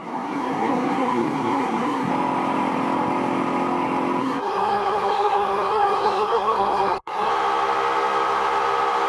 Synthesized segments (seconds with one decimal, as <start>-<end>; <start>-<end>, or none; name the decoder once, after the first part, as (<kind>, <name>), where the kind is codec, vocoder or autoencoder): 0.0-2.1 (codec, SNAC); 4.2-7.3